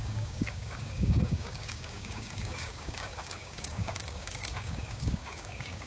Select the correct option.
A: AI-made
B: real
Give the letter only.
A